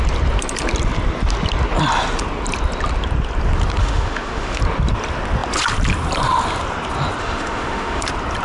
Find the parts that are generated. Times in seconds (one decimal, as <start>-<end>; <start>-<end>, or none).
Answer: 3.8-4.6; 7.2-8.0